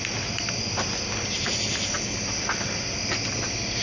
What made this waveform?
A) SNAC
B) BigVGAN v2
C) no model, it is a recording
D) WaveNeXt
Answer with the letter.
C